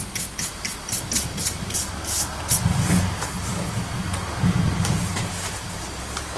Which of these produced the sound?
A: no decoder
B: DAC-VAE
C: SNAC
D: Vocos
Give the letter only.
A